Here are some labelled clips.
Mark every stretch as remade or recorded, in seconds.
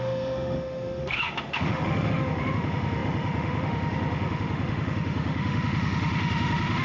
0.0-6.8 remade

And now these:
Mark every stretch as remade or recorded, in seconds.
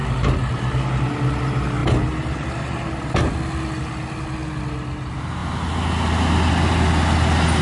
0.0-7.6 recorded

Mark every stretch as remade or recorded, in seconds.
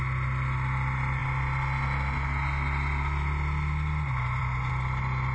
0.0-5.3 recorded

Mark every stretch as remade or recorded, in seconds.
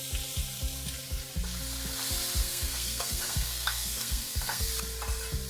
0.0-2.4 recorded; 2.4-4.7 remade; 4.7-5.5 recorded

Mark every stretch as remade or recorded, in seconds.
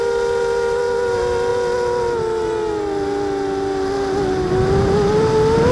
0.0-5.7 recorded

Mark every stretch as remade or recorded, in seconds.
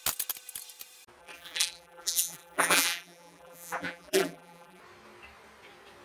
0.0-1.2 recorded; 1.2-4.8 remade; 4.8-6.0 recorded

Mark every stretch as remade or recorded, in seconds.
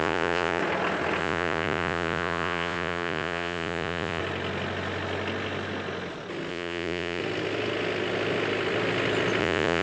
0.0-0.6 remade; 0.6-1.2 recorded; 1.2-4.2 remade; 4.2-6.5 recorded; 6.5-7.2 remade; 7.2-9.4 recorded; 9.4-9.8 remade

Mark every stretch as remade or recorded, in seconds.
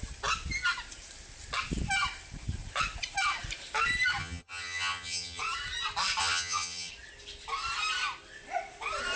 0.0-4.2 recorded; 4.2-5.4 remade; 5.4-6.2 recorded; 6.2-6.9 remade; 6.9-9.2 recorded